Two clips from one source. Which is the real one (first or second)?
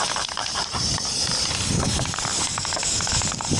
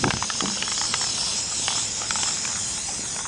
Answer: second